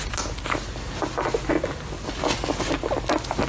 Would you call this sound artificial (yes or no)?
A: no